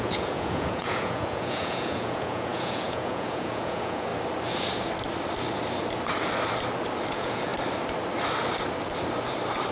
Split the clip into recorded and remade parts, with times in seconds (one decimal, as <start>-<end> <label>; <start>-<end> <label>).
0.0-4.1 remade; 4.1-7.1 recorded; 7.1-7.5 remade; 7.5-9.7 recorded